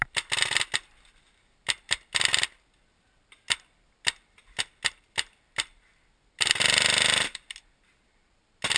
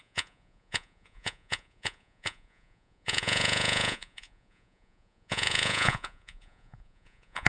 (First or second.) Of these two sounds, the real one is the first